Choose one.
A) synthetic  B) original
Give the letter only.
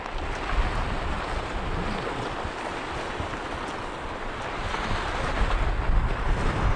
B